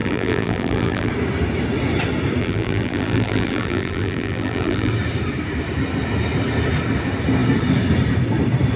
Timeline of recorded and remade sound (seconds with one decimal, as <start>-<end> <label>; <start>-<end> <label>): 0.0-1.1 remade; 1.1-2.4 recorded; 2.4-4.9 remade; 4.9-8.8 recorded